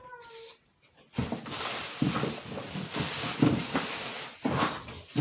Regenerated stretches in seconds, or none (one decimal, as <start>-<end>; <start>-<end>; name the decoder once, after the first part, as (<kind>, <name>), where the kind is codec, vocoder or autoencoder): none